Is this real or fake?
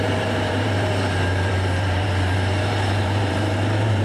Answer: fake